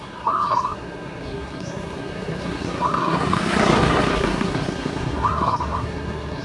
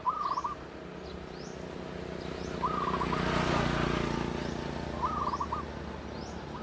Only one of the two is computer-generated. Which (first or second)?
first